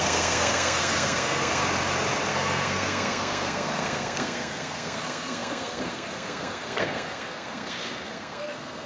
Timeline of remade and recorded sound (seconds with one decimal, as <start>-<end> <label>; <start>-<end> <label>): 0.0-1.6 remade; 1.6-2.3 recorded; 2.3-8.9 remade